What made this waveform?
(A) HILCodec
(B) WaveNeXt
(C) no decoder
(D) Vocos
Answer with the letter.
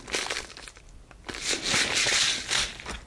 C